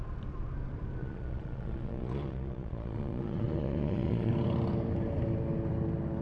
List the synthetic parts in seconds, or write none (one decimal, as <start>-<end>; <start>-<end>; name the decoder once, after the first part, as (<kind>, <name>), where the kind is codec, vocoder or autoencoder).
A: 1.0-4.3 (vocoder, Vocos)